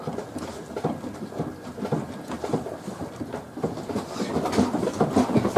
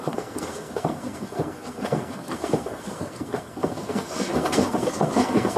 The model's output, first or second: second